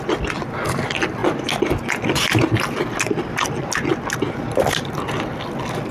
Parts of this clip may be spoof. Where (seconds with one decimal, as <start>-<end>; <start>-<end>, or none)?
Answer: none